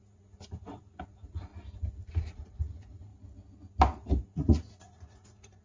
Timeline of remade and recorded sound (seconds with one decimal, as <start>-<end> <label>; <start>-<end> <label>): 0.0-1.5 remade; 1.5-2.1 recorded; 2.1-3.1 remade; 3.1-4.2 recorded; 4.2-5.6 remade

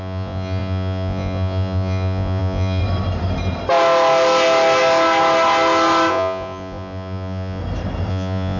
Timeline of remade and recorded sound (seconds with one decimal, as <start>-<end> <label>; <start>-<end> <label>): 0.0-2.8 remade; 2.8-6.1 recorded; 6.1-7.6 remade; 7.6-8.1 recorded; 8.1-8.6 remade

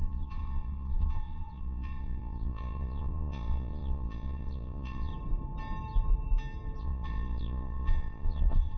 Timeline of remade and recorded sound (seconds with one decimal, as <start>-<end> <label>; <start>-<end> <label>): 0.0-5.1 remade; 5.1-6.8 recorded; 6.8-8.8 remade

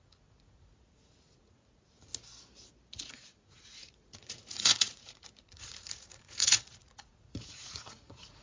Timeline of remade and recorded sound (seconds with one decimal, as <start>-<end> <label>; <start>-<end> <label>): 0.0-2.1 remade; 2.1-3.1 recorded; 3.1-8.4 remade

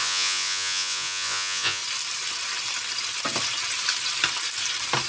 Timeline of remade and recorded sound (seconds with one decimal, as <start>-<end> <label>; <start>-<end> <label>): 0.0-1.8 remade; 1.8-5.1 recorded